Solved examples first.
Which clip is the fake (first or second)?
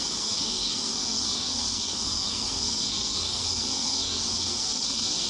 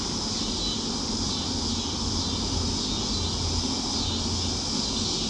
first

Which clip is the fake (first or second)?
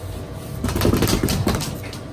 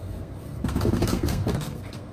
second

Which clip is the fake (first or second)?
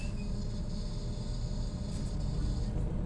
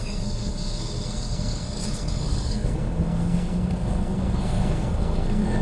second